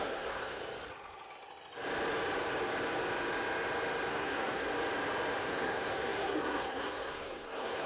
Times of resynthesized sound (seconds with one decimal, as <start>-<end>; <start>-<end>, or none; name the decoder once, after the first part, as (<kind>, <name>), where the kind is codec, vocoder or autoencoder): 0.0-0.6 (codec, SNAC); 4.1-4.7; 5.4-7.9